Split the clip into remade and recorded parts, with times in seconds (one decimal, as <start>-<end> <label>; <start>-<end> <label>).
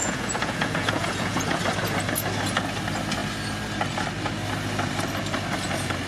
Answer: 0.0-1.6 remade; 1.6-6.1 recorded